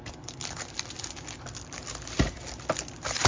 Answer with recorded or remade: recorded